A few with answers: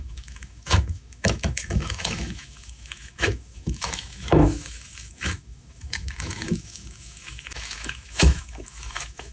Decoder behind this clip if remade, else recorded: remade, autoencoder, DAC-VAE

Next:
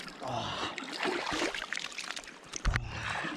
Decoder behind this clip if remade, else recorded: recorded